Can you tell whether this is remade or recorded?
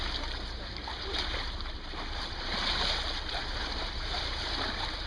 remade